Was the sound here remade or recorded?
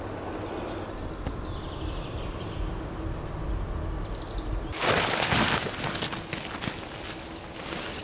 recorded